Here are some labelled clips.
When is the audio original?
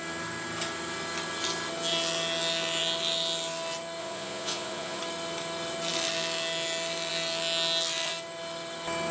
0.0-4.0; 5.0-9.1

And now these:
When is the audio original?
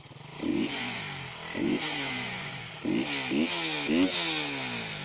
0.0-0.5; 1.0-1.6; 2.7-5.0